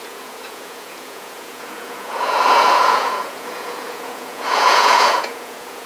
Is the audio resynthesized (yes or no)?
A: yes